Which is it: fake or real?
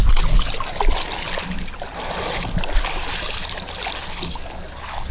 real